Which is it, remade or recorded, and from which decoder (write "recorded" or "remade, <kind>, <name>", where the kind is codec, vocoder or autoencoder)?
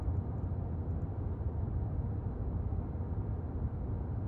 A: recorded